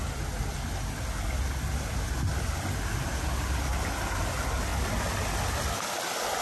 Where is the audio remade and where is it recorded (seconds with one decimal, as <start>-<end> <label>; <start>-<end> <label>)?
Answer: 0.0-6.4 recorded